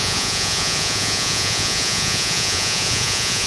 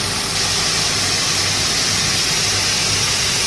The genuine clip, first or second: second